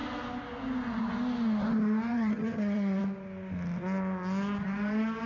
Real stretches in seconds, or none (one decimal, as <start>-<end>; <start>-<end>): 0.0-2.1; 3.0-5.3